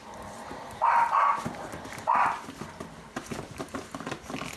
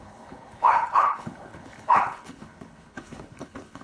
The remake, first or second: second